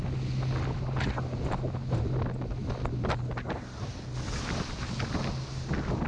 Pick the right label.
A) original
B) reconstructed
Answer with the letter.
A